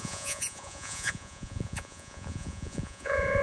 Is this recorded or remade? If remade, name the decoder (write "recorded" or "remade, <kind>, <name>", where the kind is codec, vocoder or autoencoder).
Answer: remade, vocoder, Vocos